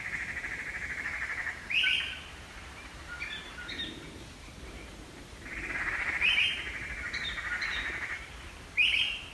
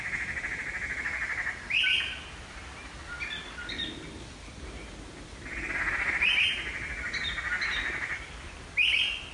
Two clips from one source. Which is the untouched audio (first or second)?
second